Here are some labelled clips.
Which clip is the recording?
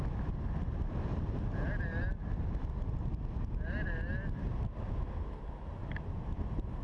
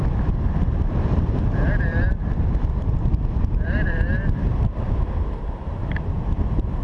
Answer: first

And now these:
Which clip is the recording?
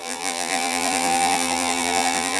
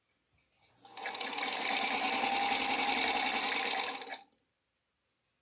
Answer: second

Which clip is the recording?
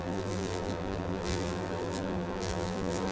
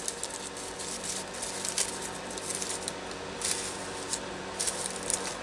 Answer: second